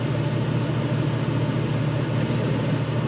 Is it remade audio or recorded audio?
recorded